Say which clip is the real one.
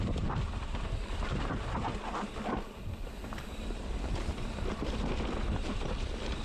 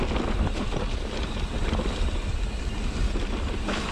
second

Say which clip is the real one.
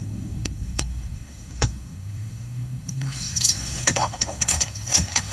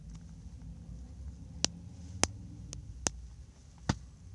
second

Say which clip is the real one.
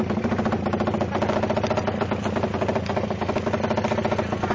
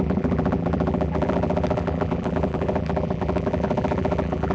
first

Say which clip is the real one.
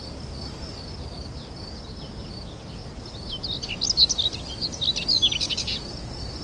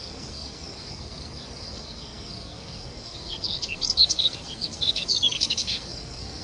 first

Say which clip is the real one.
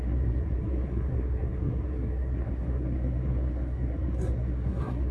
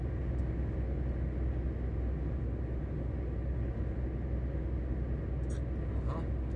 second